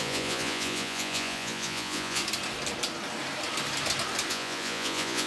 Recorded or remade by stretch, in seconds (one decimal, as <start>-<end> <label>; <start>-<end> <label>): 0.0-2.2 remade; 2.2-4.3 recorded; 4.3-5.3 remade